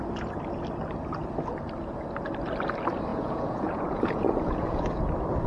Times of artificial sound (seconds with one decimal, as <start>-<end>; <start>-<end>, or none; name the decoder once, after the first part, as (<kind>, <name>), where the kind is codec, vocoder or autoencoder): 3.1-5.0 (vocoder, Vocos)